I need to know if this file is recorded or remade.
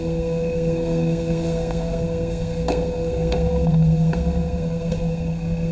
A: remade